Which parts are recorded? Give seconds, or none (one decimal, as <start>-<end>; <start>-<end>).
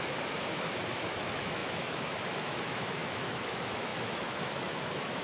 none